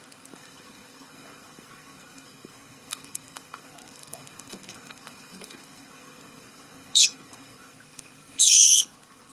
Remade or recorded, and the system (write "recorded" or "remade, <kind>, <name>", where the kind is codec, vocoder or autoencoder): remade, codec, SNAC